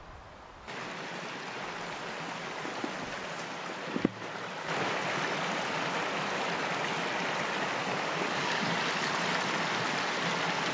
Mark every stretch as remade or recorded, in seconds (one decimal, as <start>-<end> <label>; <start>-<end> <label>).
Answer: 0.0-7.8 recorded; 7.8-8.8 remade; 8.8-10.7 recorded